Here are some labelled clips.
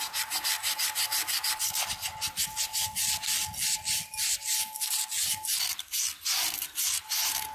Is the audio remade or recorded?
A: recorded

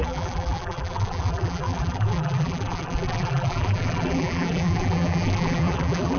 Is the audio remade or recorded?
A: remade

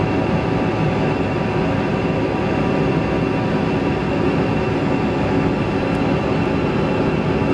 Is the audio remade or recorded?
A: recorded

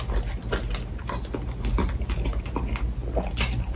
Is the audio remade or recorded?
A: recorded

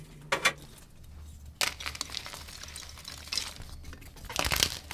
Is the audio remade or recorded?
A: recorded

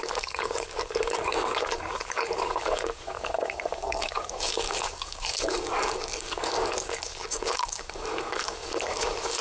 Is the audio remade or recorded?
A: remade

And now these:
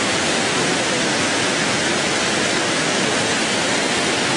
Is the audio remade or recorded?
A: recorded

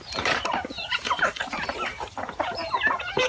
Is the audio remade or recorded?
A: remade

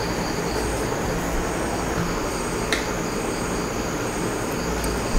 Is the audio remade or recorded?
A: recorded